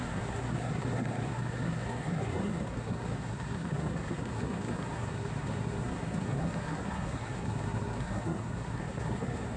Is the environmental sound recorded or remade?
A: remade